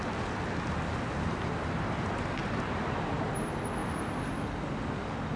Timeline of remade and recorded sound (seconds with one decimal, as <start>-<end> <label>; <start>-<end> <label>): 0.0-5.4 recorded

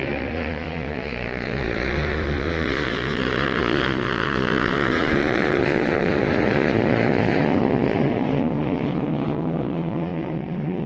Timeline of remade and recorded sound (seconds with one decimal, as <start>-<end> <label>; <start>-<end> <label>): 0.0-10.9 remade